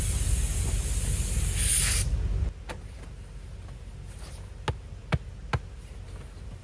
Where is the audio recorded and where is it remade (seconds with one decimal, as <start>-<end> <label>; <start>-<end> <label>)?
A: 0.0-6.6 recorded